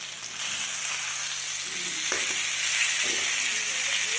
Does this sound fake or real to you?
real